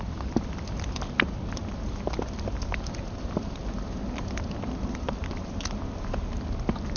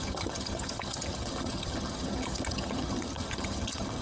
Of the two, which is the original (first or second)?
first